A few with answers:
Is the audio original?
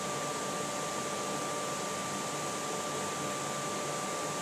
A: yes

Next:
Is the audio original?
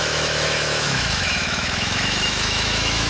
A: no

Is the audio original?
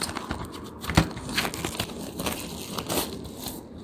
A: yes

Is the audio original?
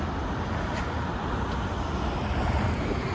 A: yes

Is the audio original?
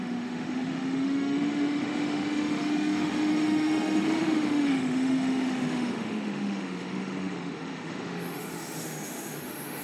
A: no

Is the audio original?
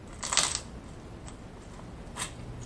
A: yes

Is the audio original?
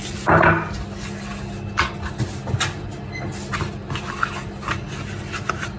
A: yes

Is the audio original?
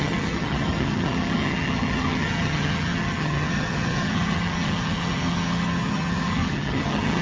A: no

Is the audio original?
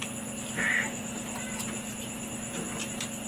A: yes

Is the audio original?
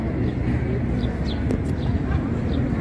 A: yes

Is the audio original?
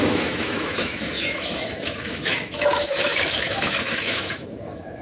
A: no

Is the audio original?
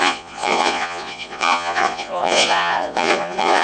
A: no